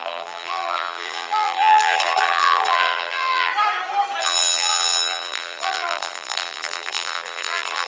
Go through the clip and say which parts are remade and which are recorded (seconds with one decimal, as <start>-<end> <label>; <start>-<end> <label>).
0.0-3.5 remade; 3.5-4.2 recorded; 4.2-7.9 remade